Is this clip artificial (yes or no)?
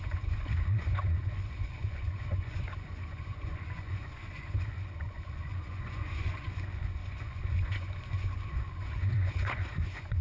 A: yes